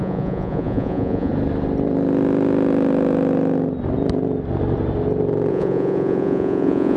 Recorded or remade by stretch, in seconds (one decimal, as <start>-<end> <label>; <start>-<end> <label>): 0.0-1.3 remade; 1.3-5.5 recorded; 5.5-7.0 remade